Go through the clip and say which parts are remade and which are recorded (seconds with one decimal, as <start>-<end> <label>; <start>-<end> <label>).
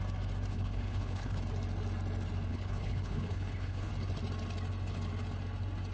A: 0.0-0.5 recorded; 0.5-1.4 remade; 1.4-2.5 recorded; 2.5-3.9 remade; 3.9-5.9 recorded